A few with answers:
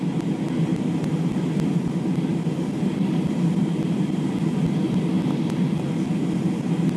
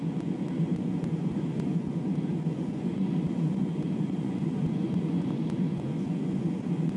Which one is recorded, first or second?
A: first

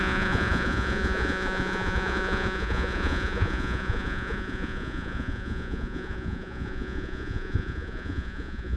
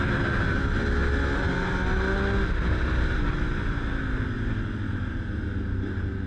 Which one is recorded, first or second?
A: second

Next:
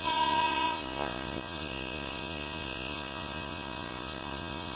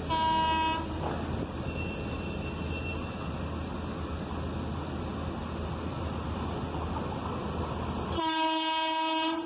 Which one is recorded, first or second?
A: second